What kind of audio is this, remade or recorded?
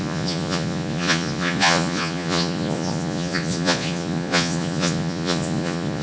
remade